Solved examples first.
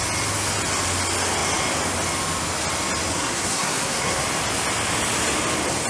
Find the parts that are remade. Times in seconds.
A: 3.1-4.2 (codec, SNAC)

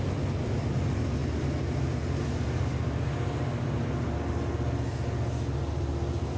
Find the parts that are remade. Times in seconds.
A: none

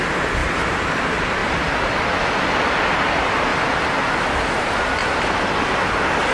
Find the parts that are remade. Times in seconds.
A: 0.4-1.0 (vocoder, BigVGAN v2); 5.0-5.6

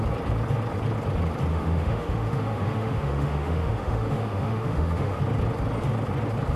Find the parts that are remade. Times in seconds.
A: 1.5-5.2 (autoencoder, DAC-VAE)

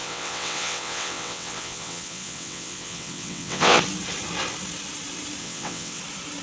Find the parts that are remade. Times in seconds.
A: 0.0-3.8 (vocoder, WaveNeXt); 5.4-6.0

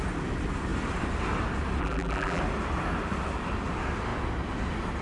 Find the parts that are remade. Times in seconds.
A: 1.8-2.4 (vocoder, BigVGAN v2)

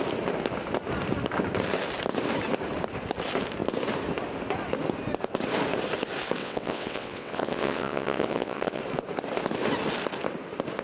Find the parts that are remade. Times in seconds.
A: 6.4-8.8 (vocoder, WaveNeXt)

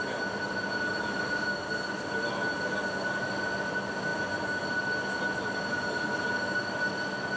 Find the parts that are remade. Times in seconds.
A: none